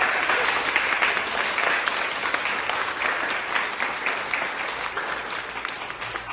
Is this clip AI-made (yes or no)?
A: no